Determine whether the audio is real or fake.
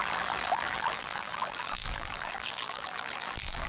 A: fake